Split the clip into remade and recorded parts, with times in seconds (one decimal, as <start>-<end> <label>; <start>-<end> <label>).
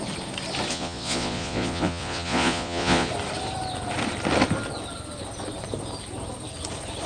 0.0-0.7 recorded; 0.7-3.1 remade; 3.1-7.1 recorded